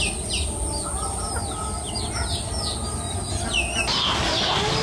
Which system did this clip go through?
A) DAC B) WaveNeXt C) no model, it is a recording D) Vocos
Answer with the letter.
C